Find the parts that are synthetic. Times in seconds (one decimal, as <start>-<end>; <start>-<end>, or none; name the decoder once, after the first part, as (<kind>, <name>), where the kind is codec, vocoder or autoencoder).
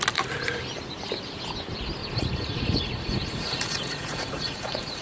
2.0-5.0 (vocoder, Vocos)